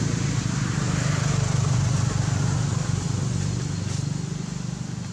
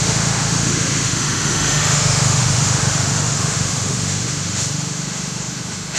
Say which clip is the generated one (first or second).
second